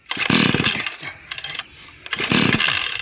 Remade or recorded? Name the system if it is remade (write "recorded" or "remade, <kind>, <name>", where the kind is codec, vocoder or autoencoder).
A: recorded